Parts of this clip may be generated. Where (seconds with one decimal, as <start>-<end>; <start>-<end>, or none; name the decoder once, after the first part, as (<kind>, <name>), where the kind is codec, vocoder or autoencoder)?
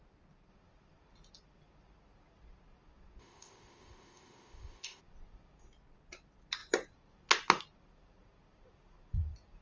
3.2-5.0 (codec, ZipCodec)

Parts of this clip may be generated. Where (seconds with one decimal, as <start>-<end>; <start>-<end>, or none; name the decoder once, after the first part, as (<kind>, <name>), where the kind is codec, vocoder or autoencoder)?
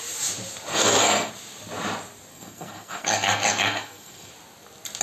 0.7-1.3 (codec, SNAC); 2.3-4.3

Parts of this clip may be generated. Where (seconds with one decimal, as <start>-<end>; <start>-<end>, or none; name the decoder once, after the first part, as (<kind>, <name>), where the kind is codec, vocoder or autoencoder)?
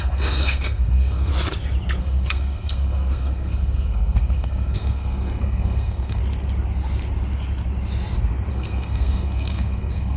0.0-1.3 (codec, SNAC); 2.0-6.2; 8.5-10.2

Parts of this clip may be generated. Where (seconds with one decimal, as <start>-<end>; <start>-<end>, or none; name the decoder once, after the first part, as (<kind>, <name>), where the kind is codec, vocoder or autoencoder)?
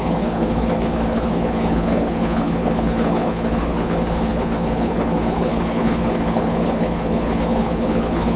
0.0-8.4 (codec, HILCodec)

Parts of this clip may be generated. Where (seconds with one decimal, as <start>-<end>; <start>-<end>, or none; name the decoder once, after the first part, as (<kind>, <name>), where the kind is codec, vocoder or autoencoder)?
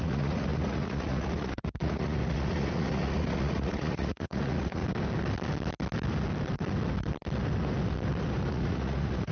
0.0-4.8 (vocoder, Vocos); 8.5-9.3